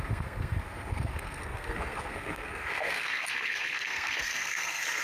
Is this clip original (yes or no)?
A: no